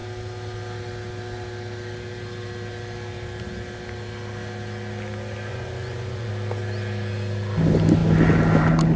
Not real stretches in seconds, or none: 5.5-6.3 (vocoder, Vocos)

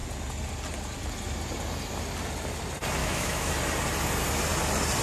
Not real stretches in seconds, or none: 3.0-3.5 (autoencoder, DAC-VAE)

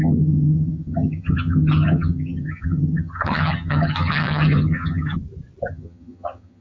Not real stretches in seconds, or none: 0.0-5.2 (vocoder, HiFi-GAN); 5.7-6.6

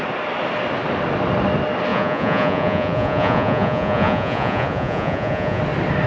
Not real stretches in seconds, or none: 1.9-5.6 (vocoder, Vocos)

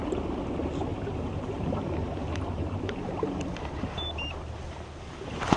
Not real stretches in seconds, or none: 0.9-4.3 (vocoder, BigVGAN v2)